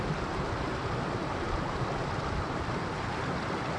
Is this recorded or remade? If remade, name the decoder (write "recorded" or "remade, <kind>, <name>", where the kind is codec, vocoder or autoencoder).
recorded